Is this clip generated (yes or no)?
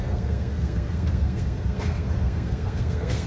yes